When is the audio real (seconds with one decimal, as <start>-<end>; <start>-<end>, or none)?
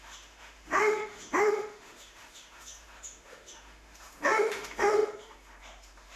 none